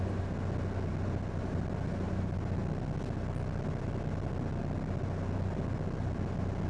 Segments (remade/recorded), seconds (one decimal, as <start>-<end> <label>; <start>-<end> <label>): 0.0-6.7 recorded